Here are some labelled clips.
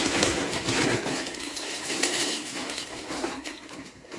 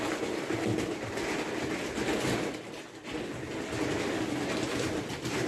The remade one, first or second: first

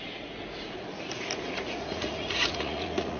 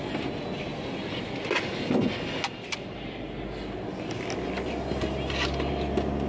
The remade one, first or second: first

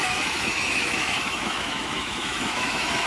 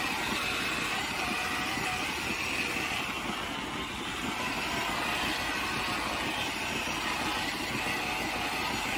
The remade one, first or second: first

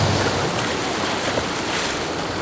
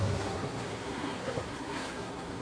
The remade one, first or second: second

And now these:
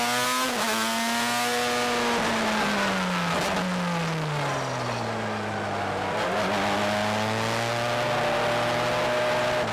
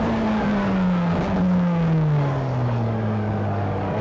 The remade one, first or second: second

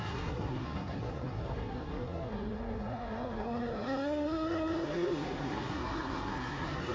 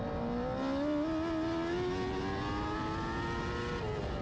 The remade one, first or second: first